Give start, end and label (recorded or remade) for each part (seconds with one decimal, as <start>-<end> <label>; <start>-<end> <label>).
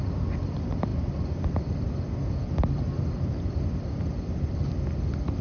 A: 0.0-5.4 recorded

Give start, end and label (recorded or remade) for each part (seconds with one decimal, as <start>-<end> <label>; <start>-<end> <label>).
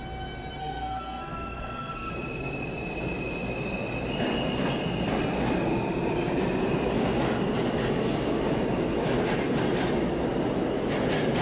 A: 0.0-0.6 recorded; 0.6-2.1 remade; 2.1-11.4 recorded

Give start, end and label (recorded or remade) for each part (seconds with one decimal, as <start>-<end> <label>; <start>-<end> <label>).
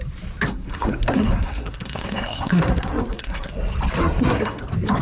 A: 0.0-0.5 recorded; 0.5-3.5 remade; 3.5-4.0 recorded; 4.0-4.6 remade; 4.6-5.0 recorded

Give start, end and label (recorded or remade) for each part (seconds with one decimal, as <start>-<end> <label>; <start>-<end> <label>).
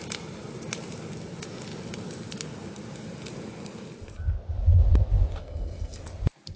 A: 0.0-5.4 recorded; 5.4-6.0 remade; 6.0-6.6 recorded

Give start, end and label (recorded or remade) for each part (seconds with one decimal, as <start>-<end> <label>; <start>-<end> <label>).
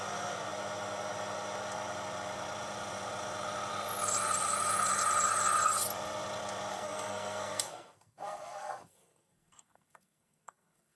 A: 0.0-6.7 recorded; 6.7-11.0 remade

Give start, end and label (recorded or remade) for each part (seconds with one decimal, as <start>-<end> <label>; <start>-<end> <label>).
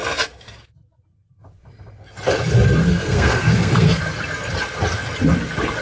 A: 0.0-2.8 recorded; 2.8-4.0 remade; 4.0-5.8 recorded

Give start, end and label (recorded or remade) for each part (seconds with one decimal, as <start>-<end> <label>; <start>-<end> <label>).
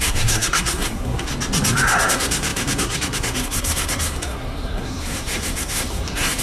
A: 0.0-1.3 remade; 1.3-2.1 recorded; 2.1-6.4 remade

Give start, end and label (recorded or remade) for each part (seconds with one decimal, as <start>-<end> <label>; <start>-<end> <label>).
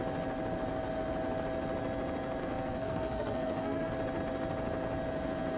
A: 0.0-2.4 recorded; 2.4-3.9 remade; 3.9-5.6 recorded